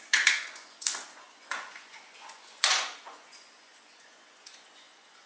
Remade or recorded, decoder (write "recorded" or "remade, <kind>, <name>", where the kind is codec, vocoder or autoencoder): remade, vocoder, Vocos